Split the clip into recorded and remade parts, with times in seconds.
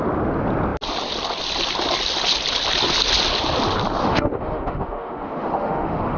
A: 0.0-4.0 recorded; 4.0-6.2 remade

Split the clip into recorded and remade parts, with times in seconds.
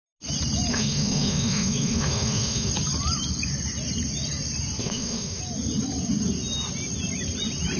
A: 0.0-0.7 recorded; 0.7-2.7 remade; 2.7-4.8 recorded; 4.8-5.4 remade; 5.4-7.8 recorded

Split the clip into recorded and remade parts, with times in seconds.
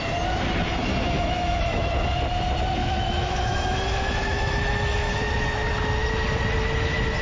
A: 0.0-0.9 recorded; 0.9-1.9 remade; 1.9-2.8 recorded; 2.8-5.2 remade; 5.2-7.2 recorded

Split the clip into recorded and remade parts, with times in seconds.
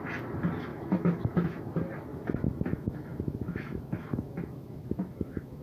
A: 0.0-0.7 recorded; 0.7-1.6 remade; 1.6-2.1 recorded; 2.1-5.6 remade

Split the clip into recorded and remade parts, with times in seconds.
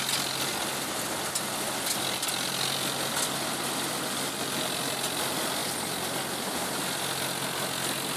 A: 0.0-8.2 recorded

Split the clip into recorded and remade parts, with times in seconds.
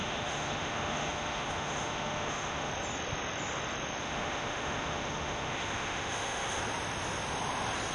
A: 0.0-2.7 remade; 2.7-4.0 recorded; 4.0-6.6 remade; 6.6-7.9 recorded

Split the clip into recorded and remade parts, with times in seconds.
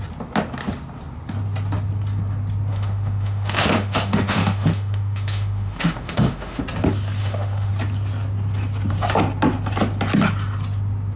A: 0.0-2.7 recorded; 2.7-6.6 remade; 6.6-7.2 recorded; 7.2-7.7 remade; 7.7-11.2 recorded